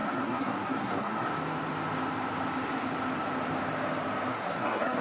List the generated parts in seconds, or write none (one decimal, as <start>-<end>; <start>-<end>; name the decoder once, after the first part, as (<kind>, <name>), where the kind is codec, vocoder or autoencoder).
0.0-1.3 (codec, SNAC); 4.3-5.0

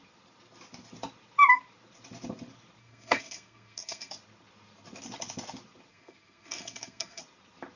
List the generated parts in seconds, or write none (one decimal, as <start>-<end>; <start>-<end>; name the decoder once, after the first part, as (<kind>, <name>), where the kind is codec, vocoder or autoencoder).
2.8-4.1 (codec, SNAC); 5.9-7.2

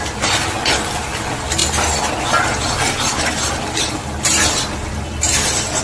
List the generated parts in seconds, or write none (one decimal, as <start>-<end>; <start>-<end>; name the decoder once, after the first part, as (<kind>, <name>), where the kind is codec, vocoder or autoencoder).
none

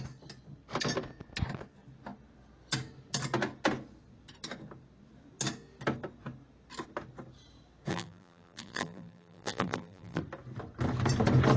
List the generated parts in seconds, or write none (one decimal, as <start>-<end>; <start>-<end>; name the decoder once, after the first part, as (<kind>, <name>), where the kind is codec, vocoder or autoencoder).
7.9-10.2 (vocoder, BigVGAN v2)

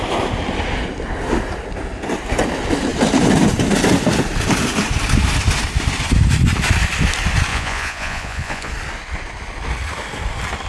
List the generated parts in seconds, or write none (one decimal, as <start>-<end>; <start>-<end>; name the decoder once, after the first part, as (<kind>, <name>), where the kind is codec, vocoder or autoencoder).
7.5-8.7 (vocoder, Vocos)

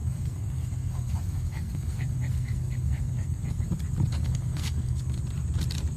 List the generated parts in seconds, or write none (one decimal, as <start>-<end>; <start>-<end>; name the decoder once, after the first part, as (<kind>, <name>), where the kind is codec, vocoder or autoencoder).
0.0-3.6 (codec, SNAC); 4.1-5.2